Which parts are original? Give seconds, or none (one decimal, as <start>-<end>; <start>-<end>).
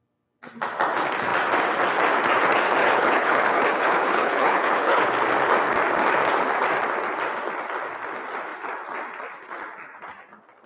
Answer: 0.0-2.8; 5.1-10.7